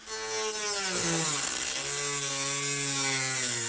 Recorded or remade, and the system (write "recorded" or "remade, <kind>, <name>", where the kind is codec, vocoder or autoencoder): recorded